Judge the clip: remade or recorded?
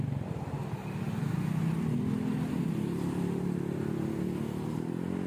recorded